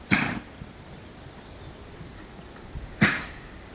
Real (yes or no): yes